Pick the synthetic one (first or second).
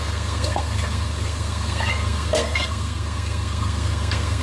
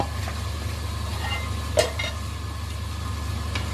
first